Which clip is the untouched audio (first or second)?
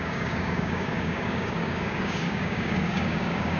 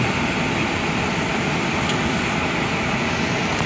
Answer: second